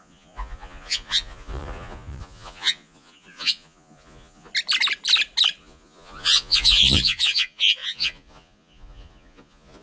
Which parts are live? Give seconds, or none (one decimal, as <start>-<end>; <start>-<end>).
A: 4.5-5.6